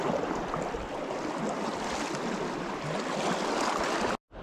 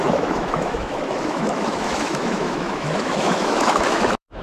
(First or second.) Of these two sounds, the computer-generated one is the second